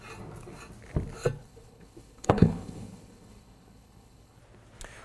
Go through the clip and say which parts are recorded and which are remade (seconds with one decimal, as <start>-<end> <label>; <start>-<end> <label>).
0.0-1.4 recorded; 1.4-4.4 remade; 4.4-5.0 recorded